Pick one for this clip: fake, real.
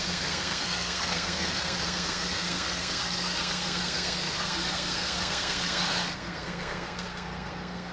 fake